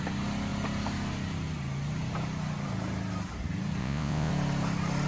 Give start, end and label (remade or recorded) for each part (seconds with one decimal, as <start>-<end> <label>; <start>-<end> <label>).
0.0-3.8 recorded; 3.8-4.3 remade; 4.3-5.1 recorded